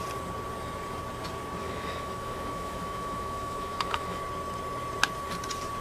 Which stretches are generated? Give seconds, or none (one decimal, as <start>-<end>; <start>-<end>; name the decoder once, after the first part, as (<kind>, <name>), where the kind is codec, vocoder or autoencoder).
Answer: 1.6-4.2 (autoencoder, DAC-VAE)